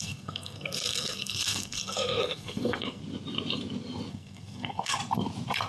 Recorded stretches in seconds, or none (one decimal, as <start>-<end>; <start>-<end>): 3.0-4.1; 5.0-5.7

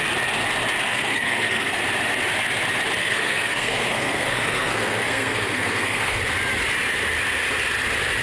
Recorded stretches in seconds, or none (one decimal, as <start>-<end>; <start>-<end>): 0.0-0.9; 1.8-3.0; 6.2-8.2

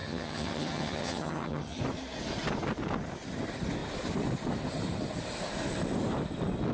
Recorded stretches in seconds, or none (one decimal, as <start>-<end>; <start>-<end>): 1.8-6.7

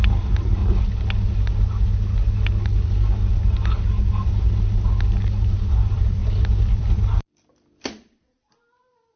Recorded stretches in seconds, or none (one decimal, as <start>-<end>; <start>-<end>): 0.6-5.7; 6.2-6.7

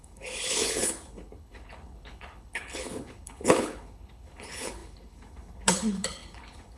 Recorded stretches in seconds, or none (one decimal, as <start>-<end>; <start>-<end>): none

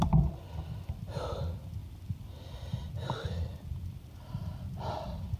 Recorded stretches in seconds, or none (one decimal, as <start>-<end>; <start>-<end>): 0.0-5.4

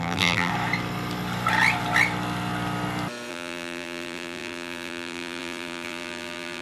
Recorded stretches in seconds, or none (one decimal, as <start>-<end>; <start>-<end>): 0.5-3.3